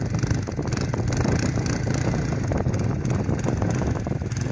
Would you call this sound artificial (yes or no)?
no